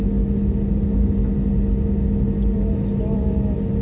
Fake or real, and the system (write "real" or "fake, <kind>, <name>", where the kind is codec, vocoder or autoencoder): real